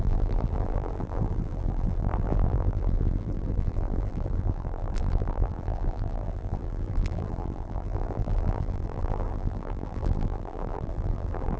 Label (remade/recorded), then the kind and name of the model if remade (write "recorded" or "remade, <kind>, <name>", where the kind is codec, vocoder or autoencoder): remade, vocoder, BigVGAN v2